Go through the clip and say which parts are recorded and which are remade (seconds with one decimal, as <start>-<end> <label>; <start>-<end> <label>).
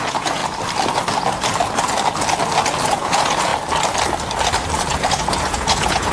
0.0-0.4 remade; 0.4-2.9 recorded; 2.9-3.5 remade; 3.5-4.9 recorded; 4.9-6.1 remade